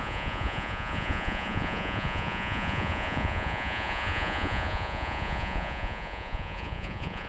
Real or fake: fake